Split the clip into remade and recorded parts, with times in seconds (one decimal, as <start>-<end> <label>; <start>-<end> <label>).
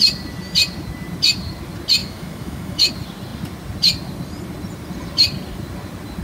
0.0-2.0 recorded; 2.0-2.9 remade; 2.9-6.2 recorded